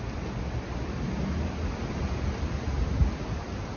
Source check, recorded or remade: recorded